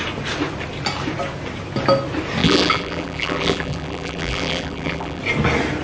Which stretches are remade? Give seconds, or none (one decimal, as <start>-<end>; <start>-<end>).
2.4-5.2